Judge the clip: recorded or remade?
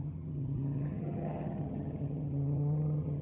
remade